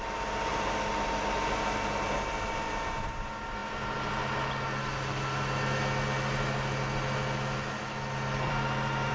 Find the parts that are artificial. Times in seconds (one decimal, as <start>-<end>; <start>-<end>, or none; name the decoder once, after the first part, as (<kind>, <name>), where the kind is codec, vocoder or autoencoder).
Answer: none